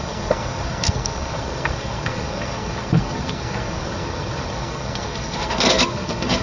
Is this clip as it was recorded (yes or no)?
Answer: no